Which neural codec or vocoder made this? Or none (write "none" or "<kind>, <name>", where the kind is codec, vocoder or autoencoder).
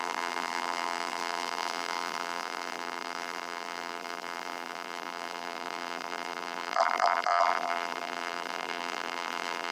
vocoder, BigVGAN v2